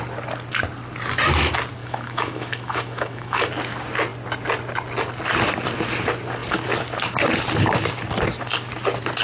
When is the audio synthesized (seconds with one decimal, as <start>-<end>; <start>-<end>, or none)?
1.8-3.5